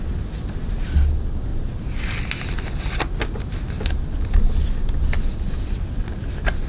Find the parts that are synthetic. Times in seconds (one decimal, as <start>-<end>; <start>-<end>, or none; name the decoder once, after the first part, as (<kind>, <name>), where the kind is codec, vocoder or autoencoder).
none